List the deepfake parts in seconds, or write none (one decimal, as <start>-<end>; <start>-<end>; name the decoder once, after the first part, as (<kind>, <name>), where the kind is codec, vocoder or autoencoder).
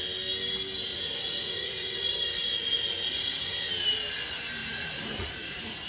0.9-3.7 (vocoder, Vocos); 4.6-5.9